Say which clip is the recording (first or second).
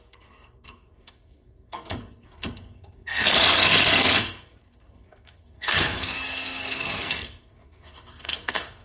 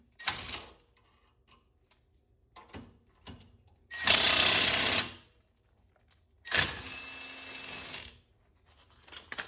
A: second